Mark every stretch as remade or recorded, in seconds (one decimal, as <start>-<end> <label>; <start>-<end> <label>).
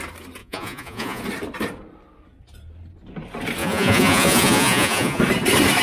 0.0-0.4 recorded; 0.4-1.2 remade; 1.2-3.6 recorded; 3.6-5.2 remade; 5.2-5.8 recorded